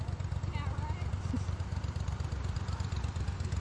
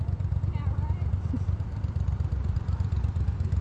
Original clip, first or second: first